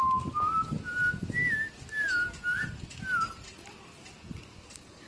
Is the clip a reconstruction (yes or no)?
no